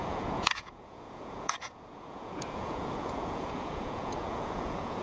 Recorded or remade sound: remade